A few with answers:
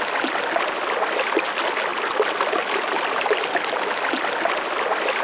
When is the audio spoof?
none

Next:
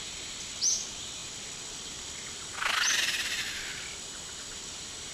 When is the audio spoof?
none

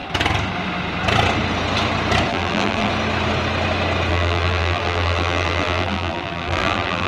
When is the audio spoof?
2.3-2.9 (vocoder, BigVGAN v2); 4.1-7.1

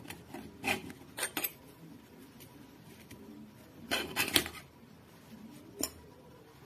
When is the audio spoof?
1.5-5.1 (vocoder, BigVGAN v2)

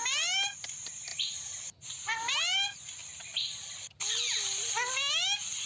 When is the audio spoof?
3.0-3.9 (vocoder, BigVGAN v2)

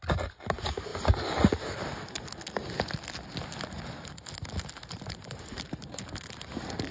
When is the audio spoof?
4.8-6.0 (vocoder, BigVGAN v2)